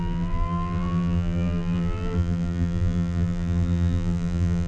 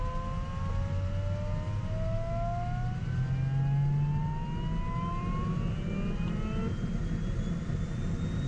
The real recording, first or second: second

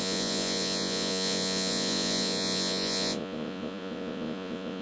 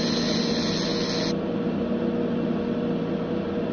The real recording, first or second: second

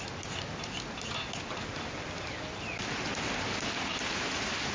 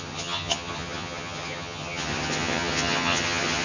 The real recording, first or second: first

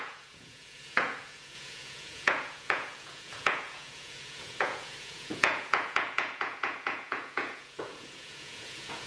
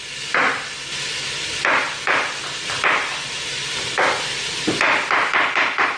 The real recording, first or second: second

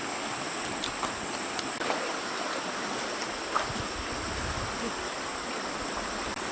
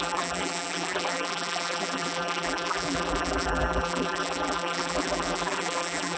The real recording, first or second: first